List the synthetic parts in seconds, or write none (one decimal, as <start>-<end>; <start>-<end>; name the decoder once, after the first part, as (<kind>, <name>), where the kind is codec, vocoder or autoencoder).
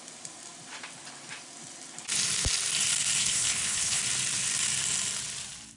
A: 3.2-4.0 (codec, HILCodec)